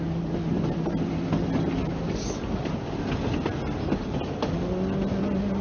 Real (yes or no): yes